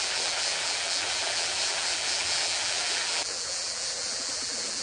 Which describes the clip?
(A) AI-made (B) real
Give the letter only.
A